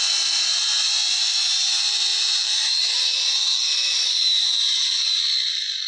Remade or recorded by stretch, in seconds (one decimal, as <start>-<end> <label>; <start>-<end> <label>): 0.0-2.1 recorded; 2.1-5.2 remade; 5.2-5.9 recorded